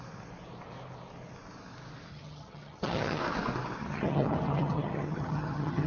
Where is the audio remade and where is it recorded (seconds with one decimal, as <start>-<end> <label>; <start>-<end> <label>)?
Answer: 0.0-2.1 recorded; 2.1-3.2 remade; 3.2-3.8 recorded; 3.8-5.9 remade